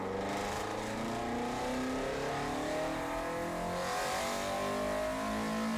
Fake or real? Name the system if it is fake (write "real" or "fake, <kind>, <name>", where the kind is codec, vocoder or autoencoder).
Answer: real